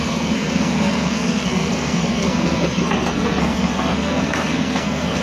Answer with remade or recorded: remade